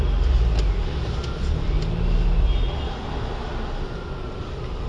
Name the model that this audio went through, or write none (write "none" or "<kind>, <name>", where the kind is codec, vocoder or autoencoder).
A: none